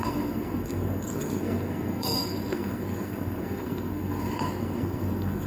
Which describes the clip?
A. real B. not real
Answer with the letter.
B